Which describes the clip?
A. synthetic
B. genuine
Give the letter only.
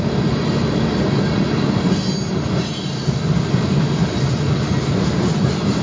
B